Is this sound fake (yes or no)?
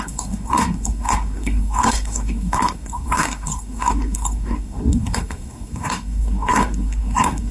yes